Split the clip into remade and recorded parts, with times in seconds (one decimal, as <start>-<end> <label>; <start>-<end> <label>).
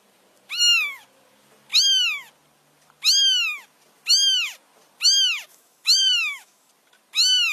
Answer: 0.0-5.5 recorded; 5.5-6.7 remade; 6.7-7.5 recorded